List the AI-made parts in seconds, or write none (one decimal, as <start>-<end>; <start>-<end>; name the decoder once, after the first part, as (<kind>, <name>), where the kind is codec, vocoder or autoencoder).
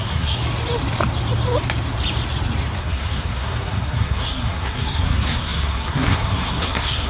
0.0-0.4 (codec, SNAC); 2.8-7.1